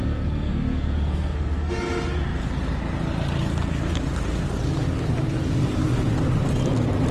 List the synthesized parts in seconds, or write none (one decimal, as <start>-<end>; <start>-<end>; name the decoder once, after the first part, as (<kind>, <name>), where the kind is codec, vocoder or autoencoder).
0.0-1.7 (codec, SNAC)

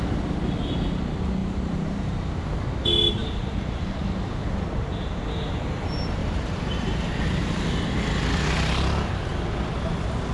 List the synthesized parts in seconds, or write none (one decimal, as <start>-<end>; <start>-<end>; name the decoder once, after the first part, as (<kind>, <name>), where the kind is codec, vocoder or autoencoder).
1.4-2.4 (vocoder, BigVGAN v2); 3.2-5.4; 6.2-7.4

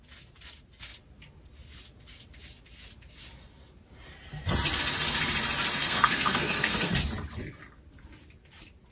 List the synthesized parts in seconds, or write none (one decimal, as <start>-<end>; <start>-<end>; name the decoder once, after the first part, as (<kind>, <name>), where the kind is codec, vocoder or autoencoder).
5.8-6.9 (codec, SNAC)

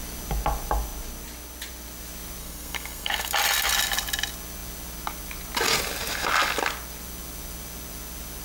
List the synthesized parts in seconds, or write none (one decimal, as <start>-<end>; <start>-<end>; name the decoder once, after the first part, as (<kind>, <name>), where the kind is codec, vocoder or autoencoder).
2.4-3.3 (codec, SNAC)

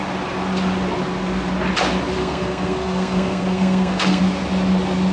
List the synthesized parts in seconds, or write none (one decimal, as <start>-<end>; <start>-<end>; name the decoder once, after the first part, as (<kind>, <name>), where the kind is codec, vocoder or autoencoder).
2.2-4.2 (codec, SNAC)

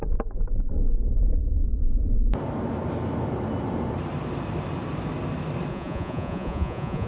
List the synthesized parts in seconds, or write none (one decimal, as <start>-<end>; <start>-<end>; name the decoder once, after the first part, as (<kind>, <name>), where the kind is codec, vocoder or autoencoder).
5.7-7.1 (vocoder, Vocos)

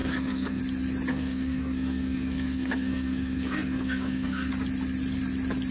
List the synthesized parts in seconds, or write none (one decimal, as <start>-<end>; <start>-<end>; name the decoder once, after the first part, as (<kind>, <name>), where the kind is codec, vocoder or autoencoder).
0.0-0.6 (codec, SNAC); 1.1-4.5